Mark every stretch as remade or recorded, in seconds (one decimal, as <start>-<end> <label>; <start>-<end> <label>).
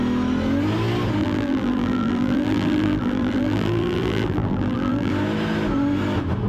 0.0-1.2 recorded; 1.2-5.1 remade; 5.1-6.5 recorded